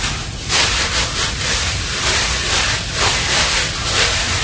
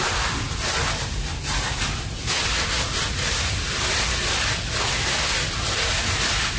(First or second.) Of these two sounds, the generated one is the first